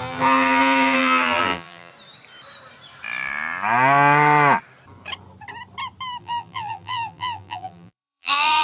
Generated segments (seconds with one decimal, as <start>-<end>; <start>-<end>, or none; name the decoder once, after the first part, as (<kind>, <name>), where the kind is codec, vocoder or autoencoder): 0.0-1.9 (vocoder, BigVGAN v2); 6.2-8.6